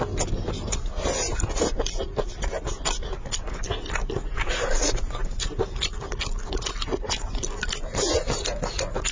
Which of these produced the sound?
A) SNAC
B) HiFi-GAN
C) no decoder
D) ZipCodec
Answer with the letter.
C